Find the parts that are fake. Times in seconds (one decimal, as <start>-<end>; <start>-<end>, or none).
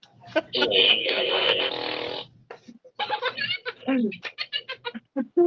0.9-1.6